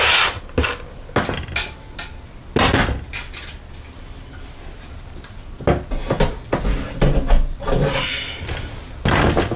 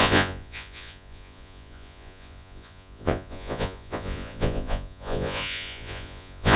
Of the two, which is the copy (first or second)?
second